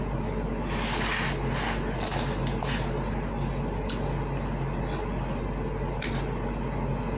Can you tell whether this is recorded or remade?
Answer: recorded